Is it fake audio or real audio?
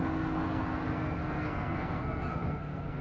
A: fake